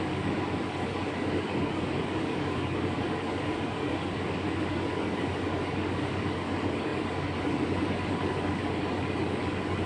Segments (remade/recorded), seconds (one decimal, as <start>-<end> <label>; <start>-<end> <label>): 0.0-9.9 remade